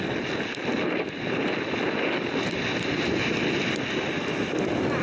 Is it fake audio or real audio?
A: real